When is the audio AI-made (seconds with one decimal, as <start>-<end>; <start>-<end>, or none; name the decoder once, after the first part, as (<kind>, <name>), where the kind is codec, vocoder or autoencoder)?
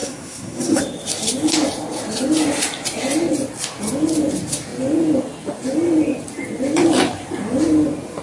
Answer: 0.0-0.8 (codec, SNAC)